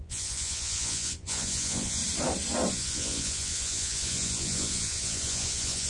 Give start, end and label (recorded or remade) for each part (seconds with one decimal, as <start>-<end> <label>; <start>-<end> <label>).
0.0-2.0 remade; 2.0-2.7 recorded; 2.7-5.9 remade